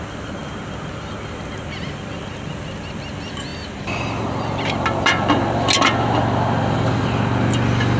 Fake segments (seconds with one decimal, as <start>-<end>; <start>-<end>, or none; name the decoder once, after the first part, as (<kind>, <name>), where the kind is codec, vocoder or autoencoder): none